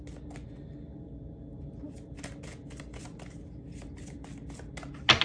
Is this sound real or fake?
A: real